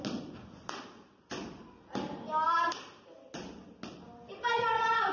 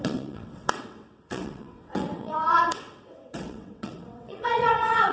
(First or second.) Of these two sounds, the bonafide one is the first